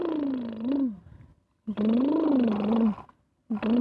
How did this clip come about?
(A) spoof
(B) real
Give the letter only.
B